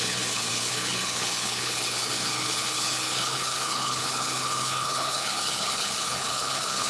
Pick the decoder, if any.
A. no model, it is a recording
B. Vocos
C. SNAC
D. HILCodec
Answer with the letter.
D